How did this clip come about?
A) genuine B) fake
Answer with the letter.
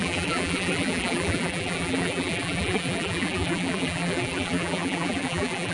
B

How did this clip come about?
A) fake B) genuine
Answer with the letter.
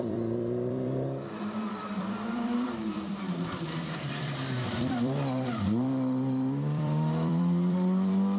A